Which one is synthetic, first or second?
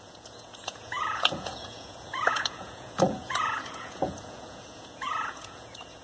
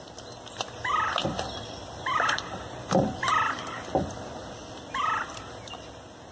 first